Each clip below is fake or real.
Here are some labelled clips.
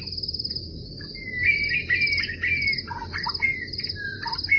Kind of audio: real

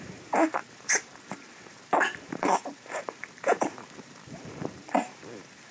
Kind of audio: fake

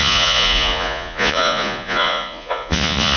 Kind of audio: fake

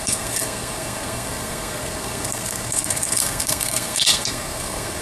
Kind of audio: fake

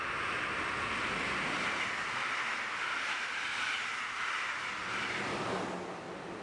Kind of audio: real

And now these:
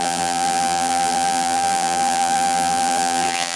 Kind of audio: fake